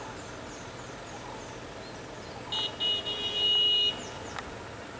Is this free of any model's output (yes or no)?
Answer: yes